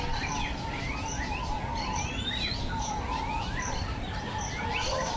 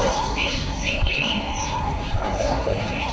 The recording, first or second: first